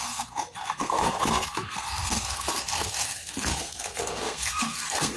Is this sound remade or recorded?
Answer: remade